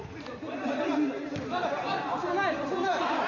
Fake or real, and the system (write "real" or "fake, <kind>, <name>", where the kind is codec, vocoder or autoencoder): real